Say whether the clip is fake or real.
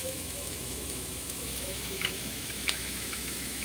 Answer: fake